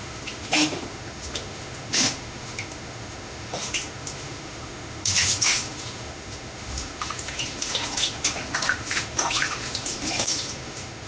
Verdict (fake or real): fake